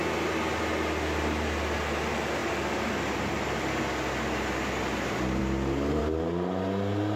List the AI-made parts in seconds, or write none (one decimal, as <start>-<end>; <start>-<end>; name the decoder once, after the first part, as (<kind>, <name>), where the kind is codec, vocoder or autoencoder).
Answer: 2.4-3.8 (vocoder, BigVGAN v2)